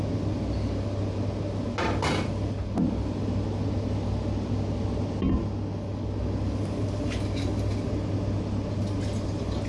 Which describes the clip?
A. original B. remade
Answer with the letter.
A